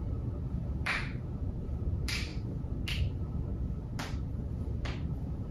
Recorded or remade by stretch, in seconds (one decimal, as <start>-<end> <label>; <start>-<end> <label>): 0.0-2.3 remade; 2.3-3.0 recorded; 3.0-3.5 remade; 3.5-4.5 recorded; 4.5-5.5 remade